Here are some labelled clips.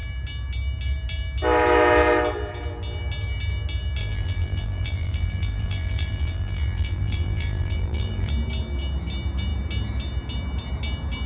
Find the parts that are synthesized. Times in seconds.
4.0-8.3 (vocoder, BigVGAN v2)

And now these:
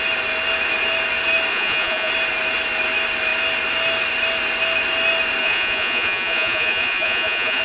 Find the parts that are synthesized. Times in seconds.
1.5-2.1 (vocoder, Vocos); 5.4-7.6

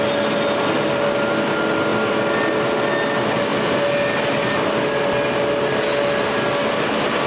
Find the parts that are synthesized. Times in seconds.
none

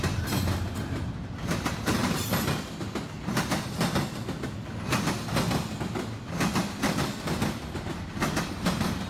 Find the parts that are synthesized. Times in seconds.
none

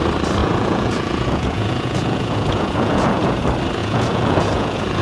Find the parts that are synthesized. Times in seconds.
0.4-3.4 (vocoder, Vocos); 3.8-5.0